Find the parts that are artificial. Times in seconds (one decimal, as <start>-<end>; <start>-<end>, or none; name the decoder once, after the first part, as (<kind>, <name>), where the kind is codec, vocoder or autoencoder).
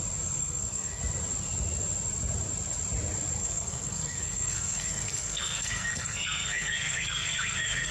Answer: 0.4-1.0 (codec, SNAC); 3.4-7.9